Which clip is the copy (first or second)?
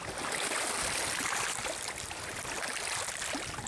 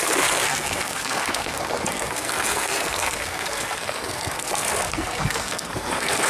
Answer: second